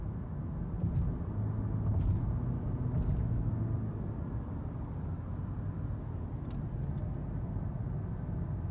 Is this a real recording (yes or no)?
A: yes